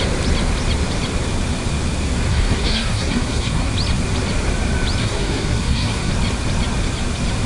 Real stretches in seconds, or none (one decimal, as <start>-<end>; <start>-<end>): 0.0-2.3; 3.7-5.0; 6.1-7.5